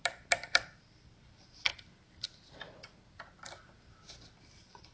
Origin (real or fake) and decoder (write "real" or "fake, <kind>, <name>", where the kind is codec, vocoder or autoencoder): fake, vocoder, BigVGAN v2